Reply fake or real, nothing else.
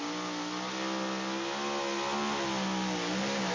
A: real